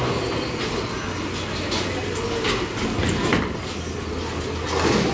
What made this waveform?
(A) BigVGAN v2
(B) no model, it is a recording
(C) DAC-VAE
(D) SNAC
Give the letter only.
B